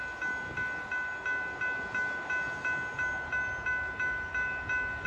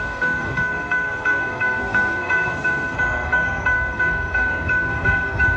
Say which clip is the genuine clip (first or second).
first